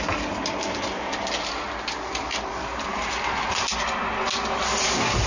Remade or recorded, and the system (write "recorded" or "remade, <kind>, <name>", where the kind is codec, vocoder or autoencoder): recorded